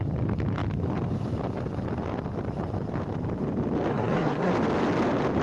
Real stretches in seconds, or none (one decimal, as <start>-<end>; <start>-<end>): 0.0-3.9; 4.5-5.4